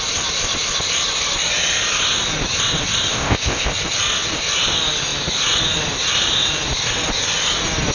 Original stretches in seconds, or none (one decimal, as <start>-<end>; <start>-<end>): 0.0-3.1; 3.7-7.9